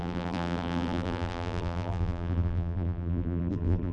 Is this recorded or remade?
remade